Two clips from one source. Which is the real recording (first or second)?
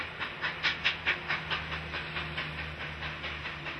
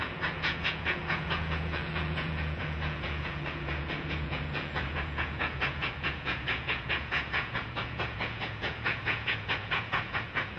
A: first